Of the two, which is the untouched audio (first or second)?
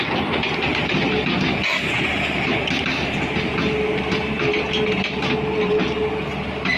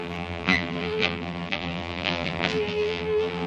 first